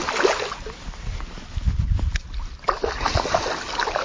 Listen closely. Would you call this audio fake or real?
real